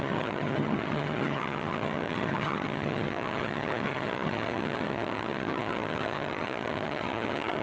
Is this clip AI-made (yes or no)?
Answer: yes